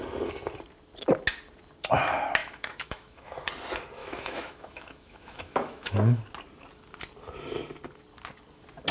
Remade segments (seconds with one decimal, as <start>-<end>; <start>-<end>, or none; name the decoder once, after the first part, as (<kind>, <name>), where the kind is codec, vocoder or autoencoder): 2.4-3.5 (autoencoder, DAC-VAE); 4.0-6.2